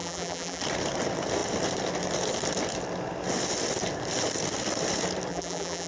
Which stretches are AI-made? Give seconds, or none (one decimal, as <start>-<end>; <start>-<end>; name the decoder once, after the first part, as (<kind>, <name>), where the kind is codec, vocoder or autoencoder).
0.0-0.6 (vocoder, BigVGAN v2); 5.3-5.9